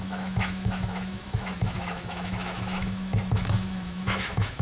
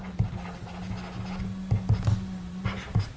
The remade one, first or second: first